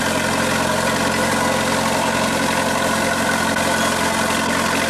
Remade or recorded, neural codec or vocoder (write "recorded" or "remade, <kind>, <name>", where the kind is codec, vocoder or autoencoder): recorded